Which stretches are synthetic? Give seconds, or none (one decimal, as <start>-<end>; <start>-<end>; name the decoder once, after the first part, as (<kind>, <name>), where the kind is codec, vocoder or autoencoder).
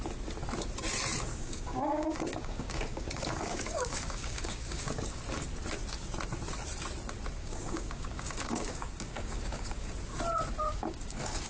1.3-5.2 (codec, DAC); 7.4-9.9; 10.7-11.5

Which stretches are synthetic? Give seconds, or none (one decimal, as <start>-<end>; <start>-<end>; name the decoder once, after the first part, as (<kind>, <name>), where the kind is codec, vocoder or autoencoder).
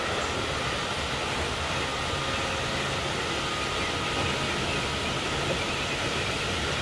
none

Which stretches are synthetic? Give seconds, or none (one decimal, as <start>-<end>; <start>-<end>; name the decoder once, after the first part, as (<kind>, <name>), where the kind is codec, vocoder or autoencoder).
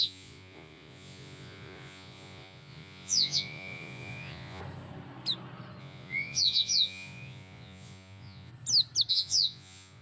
0.0-4.6 (vocoder, Vocos); 5.8-8.5; 9.1-10.0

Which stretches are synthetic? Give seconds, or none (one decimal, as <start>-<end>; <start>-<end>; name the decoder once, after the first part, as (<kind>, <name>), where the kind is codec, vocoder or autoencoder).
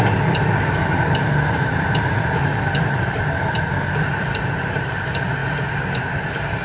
0.0-5.4 (vocoder, BigVGAN v2); 5.9-6.6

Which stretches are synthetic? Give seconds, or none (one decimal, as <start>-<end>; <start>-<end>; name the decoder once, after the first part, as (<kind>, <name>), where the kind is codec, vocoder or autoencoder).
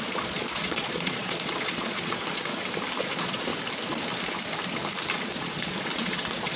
0.0-2.5 (vocoder, Vocos); 3.0-3.5; 5.2-6.6